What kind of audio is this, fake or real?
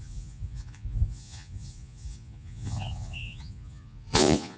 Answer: fake